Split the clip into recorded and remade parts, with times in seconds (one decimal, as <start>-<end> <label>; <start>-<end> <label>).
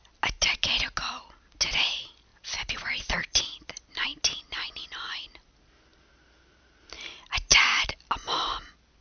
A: 0.0-2.3 recorded; 2.3-3.4 remade; 3.4-7.5 recorded; 7.5-8.1 remade; 8.1-9.0 recorded